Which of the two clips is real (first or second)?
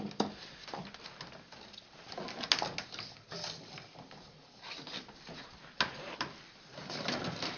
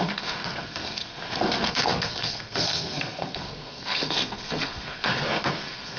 first